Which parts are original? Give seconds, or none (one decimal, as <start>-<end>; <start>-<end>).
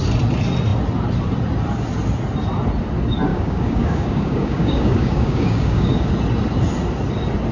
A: 0.0-3.3; 6.1-7.5